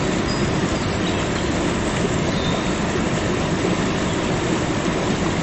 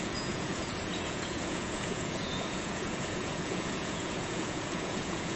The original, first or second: first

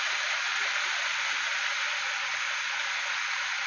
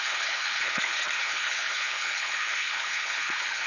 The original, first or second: first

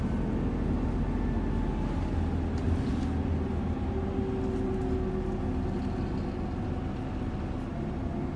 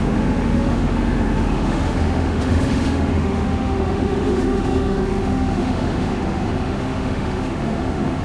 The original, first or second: first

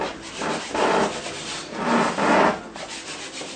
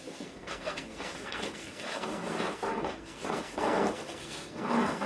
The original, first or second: first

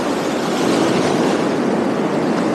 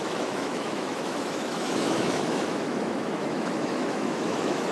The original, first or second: first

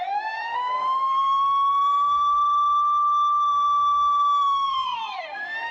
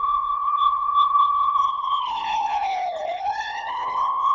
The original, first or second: first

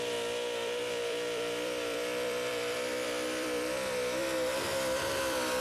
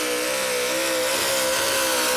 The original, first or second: second